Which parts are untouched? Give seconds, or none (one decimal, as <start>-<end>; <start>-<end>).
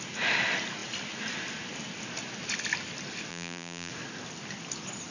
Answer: 0.0-3.3; 3.9-5.1